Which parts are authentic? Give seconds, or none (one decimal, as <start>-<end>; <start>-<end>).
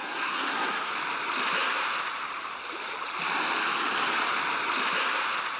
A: 0.9-5.6